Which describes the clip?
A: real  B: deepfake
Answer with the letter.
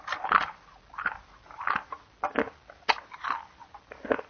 A